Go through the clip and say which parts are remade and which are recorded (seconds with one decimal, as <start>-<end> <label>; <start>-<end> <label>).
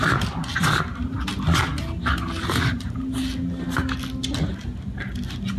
0.0-5.6 recorded